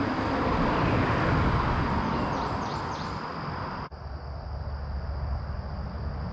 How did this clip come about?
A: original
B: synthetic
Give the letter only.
A